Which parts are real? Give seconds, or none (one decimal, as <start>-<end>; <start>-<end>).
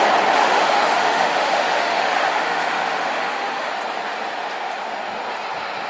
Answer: 0.0-0.4; 3.7-5.9